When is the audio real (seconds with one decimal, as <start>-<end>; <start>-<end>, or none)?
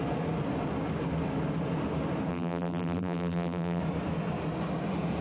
0.0-2.3; 3.8-5.2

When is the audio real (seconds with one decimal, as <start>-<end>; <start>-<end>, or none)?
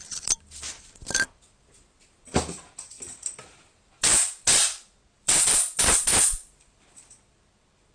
4.1-5.1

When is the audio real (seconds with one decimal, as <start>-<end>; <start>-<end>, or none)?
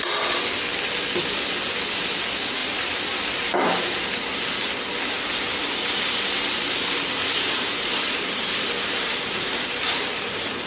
0.0-2.6; 4.5-5.6